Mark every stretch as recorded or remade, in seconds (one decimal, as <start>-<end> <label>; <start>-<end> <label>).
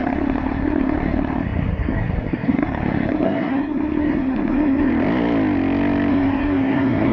0.0-4.9 remade; 4.9-6.1 recorded; 6.1-7.1 remade